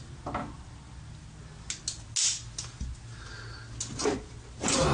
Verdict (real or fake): real